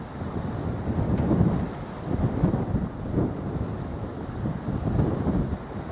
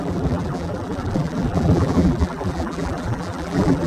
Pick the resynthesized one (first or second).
second